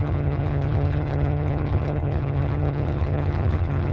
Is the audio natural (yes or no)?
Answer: no